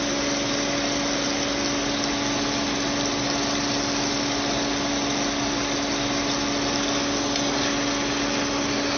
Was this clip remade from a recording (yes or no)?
no